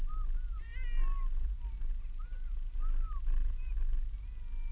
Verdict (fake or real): real